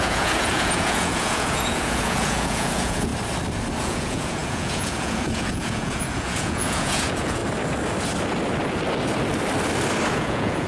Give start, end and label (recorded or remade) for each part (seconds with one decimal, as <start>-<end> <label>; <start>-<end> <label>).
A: 0.0-3.1 remade; 3.1-3.8 recorded; 3.8-7.4 remade; 7.4-10.1 recorded; 10.1-10.7 remade